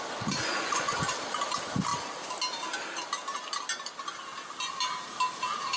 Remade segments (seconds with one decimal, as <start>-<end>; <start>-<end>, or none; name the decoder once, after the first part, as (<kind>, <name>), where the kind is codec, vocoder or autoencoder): 0.4-1.0 (vocoder, Vocos)